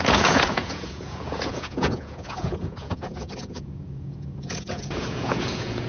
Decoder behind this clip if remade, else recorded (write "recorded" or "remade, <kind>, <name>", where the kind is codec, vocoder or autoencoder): remade, vocoder, Vocos